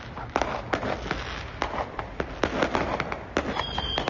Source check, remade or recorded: recorded